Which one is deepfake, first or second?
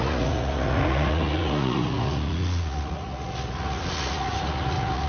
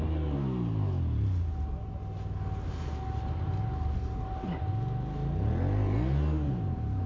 first